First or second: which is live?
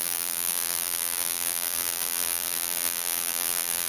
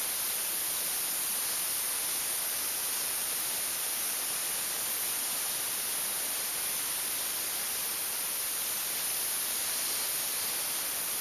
second